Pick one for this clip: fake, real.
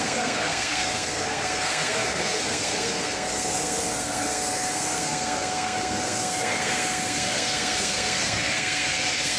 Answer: fake